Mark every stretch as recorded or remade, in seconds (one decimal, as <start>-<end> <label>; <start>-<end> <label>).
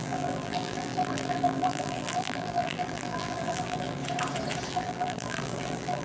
0.0-4.0 remade; 4.0-4.7 recorded; 4.7-6.0 remade